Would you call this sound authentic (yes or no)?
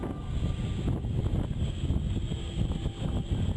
yes